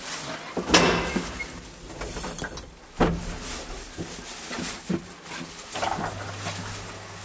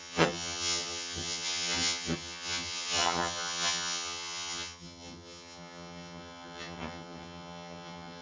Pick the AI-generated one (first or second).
second